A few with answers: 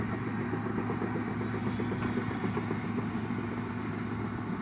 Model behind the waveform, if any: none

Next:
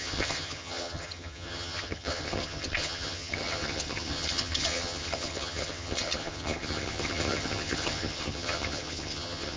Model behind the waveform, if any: vocoder, HiFi-GAN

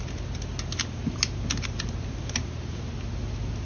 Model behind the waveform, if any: none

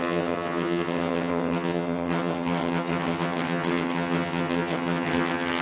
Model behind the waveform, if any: vocoder, HiFi-GAN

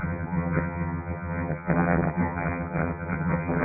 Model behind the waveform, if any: vocoder, HiFi-GAN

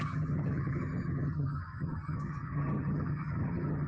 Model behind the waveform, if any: vocoder, HiFi-GAN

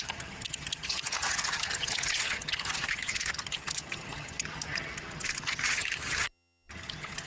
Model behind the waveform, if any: vocoder, HiFi-GAN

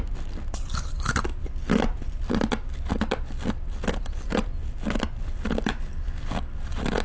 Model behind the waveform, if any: none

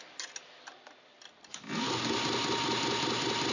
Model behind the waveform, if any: none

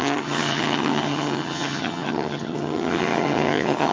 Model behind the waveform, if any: vocoder, HiFi-GAN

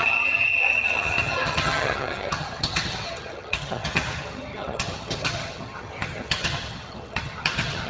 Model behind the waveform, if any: vocoder, HiFi-GAN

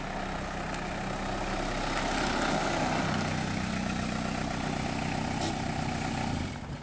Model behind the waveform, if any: none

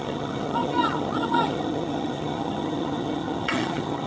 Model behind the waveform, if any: vocoder, HiFi-GAN